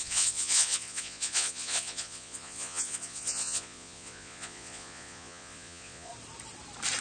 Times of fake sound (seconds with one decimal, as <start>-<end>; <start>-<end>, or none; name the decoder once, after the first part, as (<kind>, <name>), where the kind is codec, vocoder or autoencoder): 0.0-6.1 (vocoder, Vocos)